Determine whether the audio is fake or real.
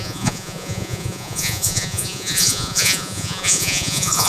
fake